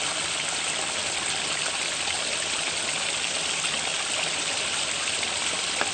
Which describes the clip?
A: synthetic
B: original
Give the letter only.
B